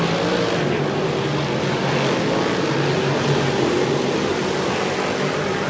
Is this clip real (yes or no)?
yes